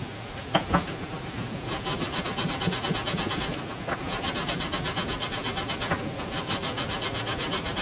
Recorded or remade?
recorded